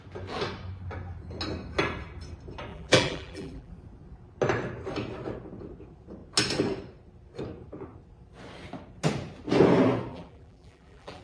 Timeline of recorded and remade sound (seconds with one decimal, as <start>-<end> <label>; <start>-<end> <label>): 0.0-2.7 recorded; 2.7-3.7 remade; 3.7-10.1 recorded; 10.1-11.2 remade